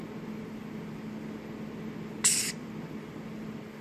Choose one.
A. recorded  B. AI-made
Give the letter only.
A